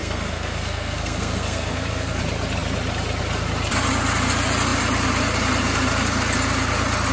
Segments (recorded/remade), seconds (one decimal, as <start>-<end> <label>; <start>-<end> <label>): 0.0-2.2 remade; 2.2-7.1 recorded